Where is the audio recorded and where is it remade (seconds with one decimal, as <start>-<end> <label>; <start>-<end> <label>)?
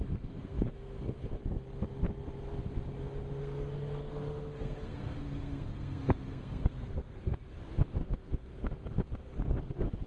0.0-1.4 remade; 1.4-3.4 recorded; 3.4-10.1 remade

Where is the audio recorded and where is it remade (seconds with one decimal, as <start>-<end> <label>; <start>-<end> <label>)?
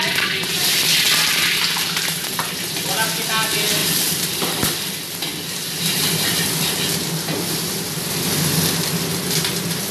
0.0-9.9 recorded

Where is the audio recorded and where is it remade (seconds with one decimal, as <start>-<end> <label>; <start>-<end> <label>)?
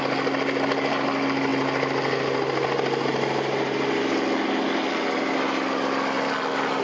0.0-6.8 recorded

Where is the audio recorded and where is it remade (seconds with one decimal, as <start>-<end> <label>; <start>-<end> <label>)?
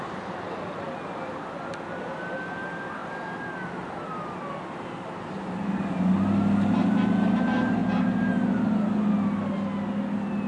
0.0-10.5 recorded